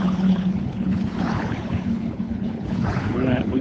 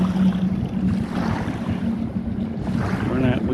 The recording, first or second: second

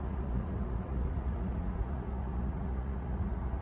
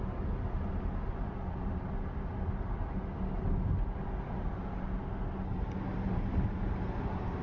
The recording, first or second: second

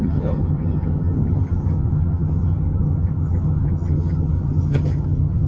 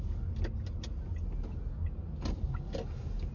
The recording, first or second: second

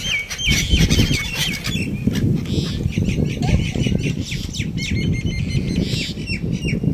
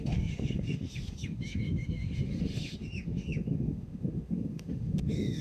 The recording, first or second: first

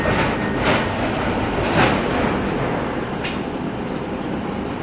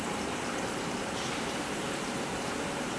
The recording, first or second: first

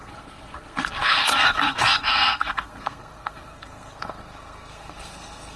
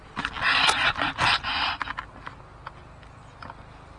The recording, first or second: second